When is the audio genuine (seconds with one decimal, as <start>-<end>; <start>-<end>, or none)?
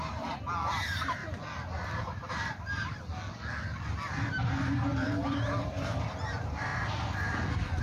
1.2-2.3; 3.1-3.9; 6.7-7.8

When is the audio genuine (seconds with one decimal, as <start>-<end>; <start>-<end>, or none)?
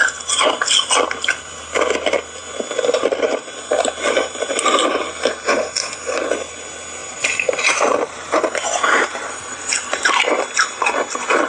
0.0-7.0; 9.8-11.5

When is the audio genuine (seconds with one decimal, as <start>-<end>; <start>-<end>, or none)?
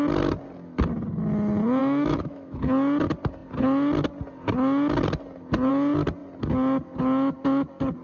0.0-1.8; 2.6-8.0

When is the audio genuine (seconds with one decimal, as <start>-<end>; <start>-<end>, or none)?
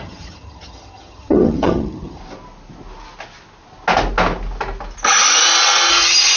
2.2-5.9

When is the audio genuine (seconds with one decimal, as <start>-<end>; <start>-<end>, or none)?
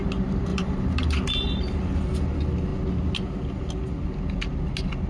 0.0-0.5; 1.1-5.1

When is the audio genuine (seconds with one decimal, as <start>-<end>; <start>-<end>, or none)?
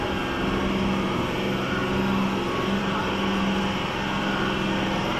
0.0-5.2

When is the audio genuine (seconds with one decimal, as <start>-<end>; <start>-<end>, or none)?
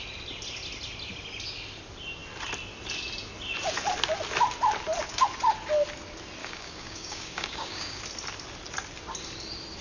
0.0-6.4; 8.0-9.8